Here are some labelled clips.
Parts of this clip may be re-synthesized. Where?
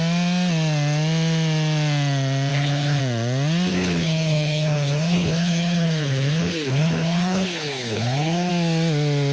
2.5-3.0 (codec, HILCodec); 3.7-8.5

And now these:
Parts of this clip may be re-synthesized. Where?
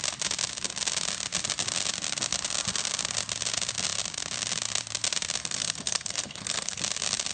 5.4-6.8 (codec, SNAC)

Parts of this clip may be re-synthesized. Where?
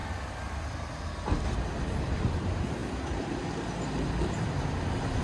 none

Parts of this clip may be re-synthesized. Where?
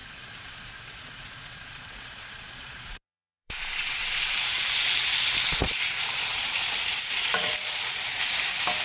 0.0-4.3 (vocoder, Vocos); 5.5-8.0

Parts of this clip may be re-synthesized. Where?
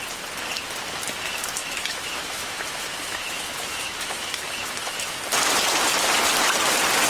1.6-5.2 (autoencoder, DAC-VAE)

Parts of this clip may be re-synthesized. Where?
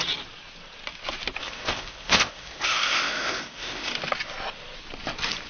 1.4-3.9 (codec, ZipCodec)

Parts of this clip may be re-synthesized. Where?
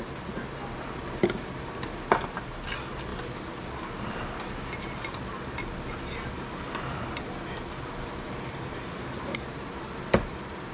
none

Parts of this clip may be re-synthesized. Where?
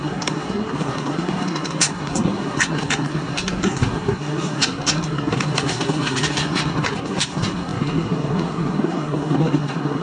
0.0-10.0 (codec, SNAC)